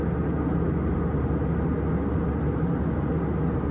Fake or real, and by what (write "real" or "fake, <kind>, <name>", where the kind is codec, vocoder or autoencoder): real